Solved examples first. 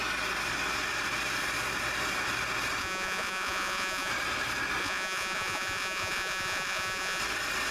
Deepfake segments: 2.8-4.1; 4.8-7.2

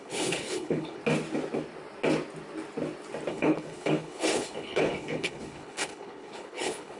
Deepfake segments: 0.0-1.0; 3.3-7.0

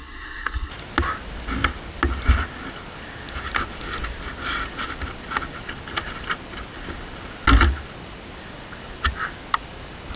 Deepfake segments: 0.0-0.7

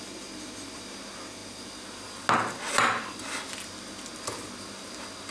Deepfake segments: none

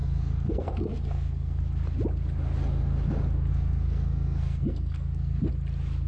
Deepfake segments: 0.0-1.6; 3.5-5.5